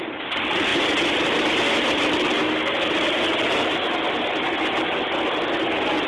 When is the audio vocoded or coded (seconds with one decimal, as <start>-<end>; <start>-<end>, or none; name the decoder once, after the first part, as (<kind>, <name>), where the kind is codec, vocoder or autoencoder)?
none